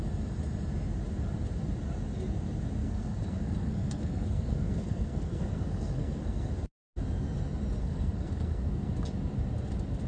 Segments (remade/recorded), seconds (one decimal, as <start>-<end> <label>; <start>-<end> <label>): 0.0-2.8 recorded; 2.8-6.5 remade; 6.5-7.8 recorded; 7.8-8.9 remade; 8.9-10.1 recorded